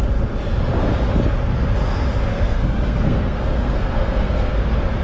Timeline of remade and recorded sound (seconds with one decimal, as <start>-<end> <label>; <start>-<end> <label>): 0.0-2.3 recorded; 2.3-4.6 remade; 4.6-5.0 recorded